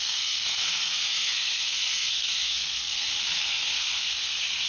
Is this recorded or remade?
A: remade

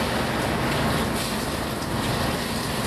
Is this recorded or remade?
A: recorded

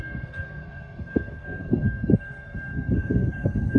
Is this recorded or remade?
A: remade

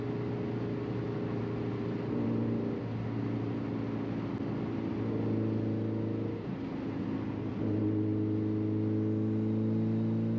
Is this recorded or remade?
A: recorded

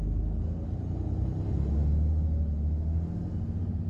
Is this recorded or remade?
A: recorded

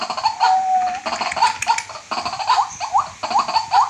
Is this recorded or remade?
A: recorded